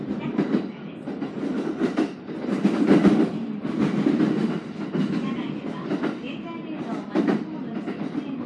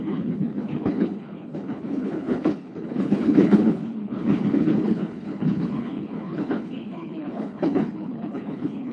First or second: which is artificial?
second